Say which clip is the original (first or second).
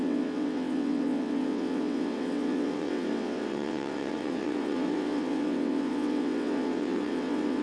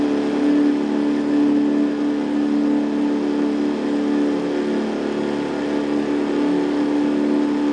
second